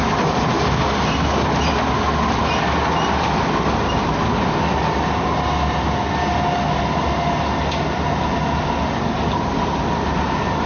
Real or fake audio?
real